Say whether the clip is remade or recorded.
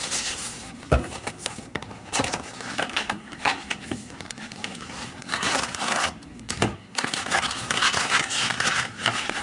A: remade